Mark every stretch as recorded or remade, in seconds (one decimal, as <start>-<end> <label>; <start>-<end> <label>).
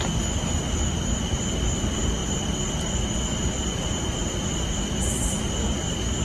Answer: 0.0-6.2 recorded